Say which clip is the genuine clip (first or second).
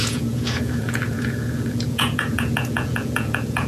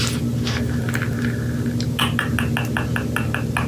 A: second